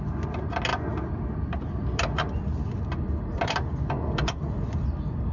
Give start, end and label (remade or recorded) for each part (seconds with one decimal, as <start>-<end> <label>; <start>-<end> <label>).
0.0-5.3 recorded